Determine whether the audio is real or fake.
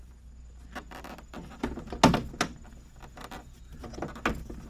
real